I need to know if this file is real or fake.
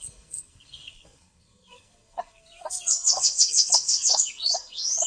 fake